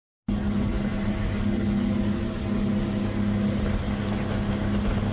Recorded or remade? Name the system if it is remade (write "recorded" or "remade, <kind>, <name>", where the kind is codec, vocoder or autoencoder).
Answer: recorded